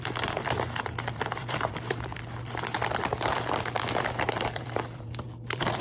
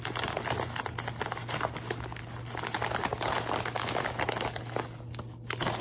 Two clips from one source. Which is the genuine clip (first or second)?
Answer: second